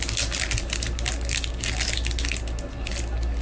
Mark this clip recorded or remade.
recorded